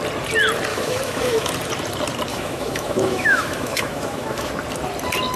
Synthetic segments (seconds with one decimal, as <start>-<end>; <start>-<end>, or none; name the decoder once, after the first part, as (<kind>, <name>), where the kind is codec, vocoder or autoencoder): 0.7-1.5 (autoencoder, DAC-VAE); 2.3-4.5